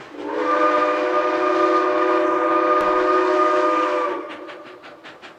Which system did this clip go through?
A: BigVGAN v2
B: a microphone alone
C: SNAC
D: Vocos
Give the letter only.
B